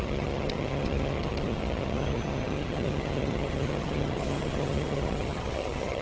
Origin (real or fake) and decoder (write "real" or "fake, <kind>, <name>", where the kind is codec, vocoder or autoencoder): fake, vocoder, HiFi-GAN